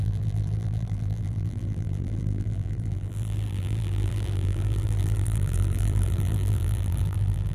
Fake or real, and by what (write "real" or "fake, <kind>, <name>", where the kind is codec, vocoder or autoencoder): fake, vocoder, BigVGAN v2